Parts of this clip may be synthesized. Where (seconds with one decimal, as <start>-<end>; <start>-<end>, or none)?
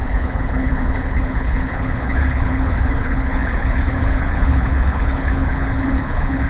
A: 0.0-6.5